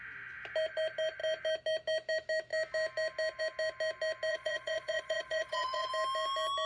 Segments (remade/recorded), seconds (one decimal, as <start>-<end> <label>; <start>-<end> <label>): 0.0-4.3 recorded; 4.3-5.9 remade; 5.9-6.7 recorded

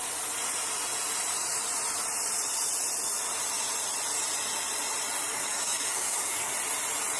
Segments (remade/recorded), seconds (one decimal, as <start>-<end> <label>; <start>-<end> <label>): 0.0-5.3 recorded; 5.3-6.5 remade; 6.5-7.2 recorded